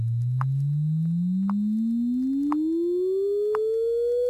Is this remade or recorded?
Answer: recorded